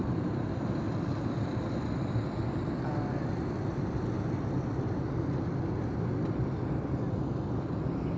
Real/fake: real